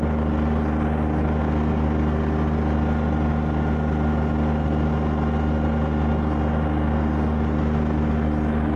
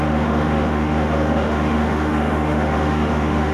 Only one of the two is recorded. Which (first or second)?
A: first